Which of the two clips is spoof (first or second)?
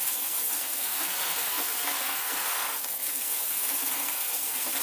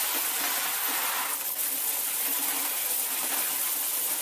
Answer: first